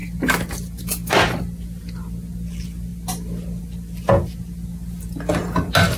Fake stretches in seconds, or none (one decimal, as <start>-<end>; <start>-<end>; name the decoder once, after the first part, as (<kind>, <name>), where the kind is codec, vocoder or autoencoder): none